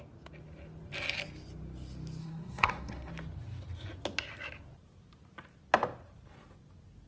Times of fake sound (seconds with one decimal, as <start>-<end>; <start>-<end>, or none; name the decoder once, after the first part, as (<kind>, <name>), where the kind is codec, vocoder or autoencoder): 2.2-3.1 (codec, SNAC)